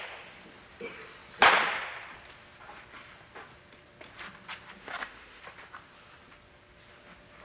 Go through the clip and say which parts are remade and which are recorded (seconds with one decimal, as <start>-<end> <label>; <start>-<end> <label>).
0.0-4.8 recorded; 4.8-5.4 remade; 5.4-7.4 recorded